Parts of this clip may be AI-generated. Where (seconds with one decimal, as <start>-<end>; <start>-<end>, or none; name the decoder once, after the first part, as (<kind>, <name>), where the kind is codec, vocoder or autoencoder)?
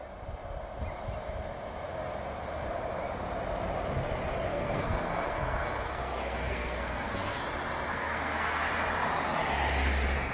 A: 4.5-7.4 (codec, SNAC); 7.9-8.7